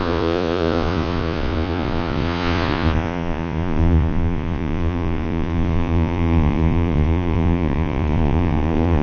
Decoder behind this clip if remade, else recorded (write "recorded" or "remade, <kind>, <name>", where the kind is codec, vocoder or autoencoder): remade, vocoder, Vocos